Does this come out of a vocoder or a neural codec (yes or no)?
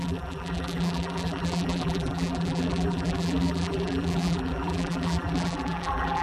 yes